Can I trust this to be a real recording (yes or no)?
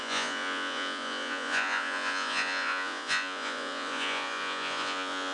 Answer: no